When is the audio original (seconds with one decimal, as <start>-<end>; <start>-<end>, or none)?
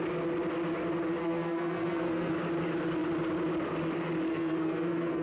0.0-1.2; 2.3-4.3